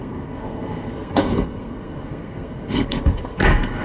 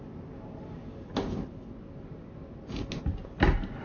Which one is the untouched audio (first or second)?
second